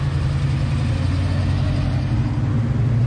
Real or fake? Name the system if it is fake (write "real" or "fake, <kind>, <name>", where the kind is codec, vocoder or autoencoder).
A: real